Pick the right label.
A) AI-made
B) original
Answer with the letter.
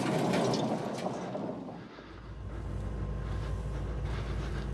B